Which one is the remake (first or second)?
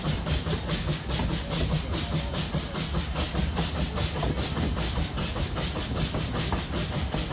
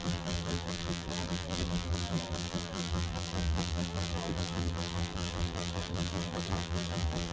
second